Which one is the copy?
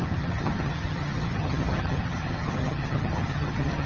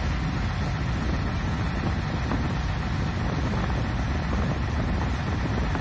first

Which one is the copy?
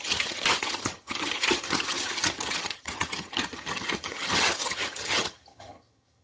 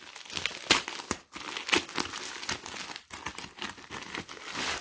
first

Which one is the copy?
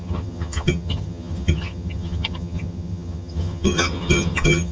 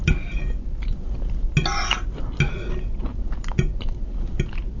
first